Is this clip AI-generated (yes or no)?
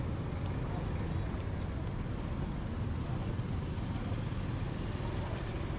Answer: no